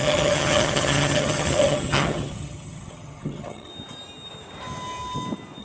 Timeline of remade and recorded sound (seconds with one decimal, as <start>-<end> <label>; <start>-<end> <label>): 0.0-3.7 remade; 3.7-5.6 recorded